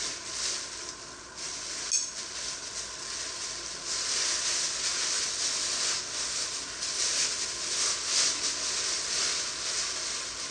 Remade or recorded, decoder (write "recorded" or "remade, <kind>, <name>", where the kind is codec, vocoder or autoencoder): recorded